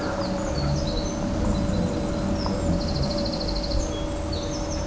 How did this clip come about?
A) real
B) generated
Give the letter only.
A